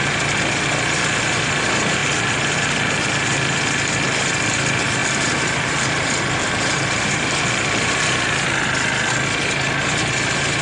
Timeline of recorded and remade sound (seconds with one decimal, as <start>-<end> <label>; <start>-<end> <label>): 0.0-5.0 recorded; 5.0-8.0 remade; 8.0-10.6 recorded

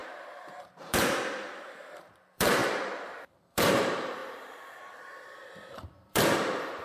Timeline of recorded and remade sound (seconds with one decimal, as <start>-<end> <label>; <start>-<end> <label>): 0.0-6.8 remade

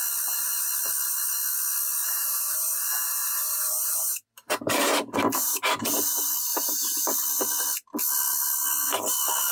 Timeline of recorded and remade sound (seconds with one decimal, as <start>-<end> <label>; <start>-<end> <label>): 0.0-2.0 recorded; 2.0-6.3 remade; 6.3-9.5 recorded

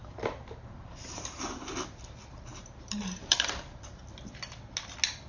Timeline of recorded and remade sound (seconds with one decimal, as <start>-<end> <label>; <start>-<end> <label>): 0.0-1.7 remade; 1.7-2.5 recorded; 2.5-4.0 remade; 4.0-5.3 recorded

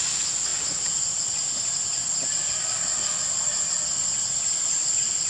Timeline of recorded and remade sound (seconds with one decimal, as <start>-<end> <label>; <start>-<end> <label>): 0.0-5.3 recorded